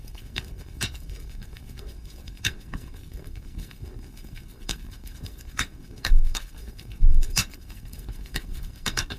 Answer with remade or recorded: remade